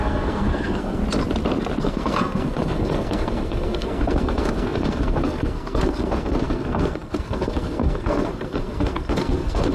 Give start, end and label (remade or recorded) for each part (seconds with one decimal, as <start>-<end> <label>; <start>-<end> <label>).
0.0-1.0 remade; 1.0-1.8 recorded; 1.8-9.7 remade